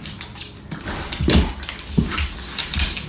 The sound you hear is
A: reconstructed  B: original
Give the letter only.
B